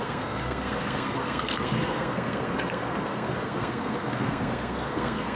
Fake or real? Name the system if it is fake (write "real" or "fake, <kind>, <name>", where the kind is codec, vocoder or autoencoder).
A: fake, codec, SNAC